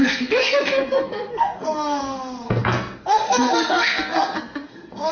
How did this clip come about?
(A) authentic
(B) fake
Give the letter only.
B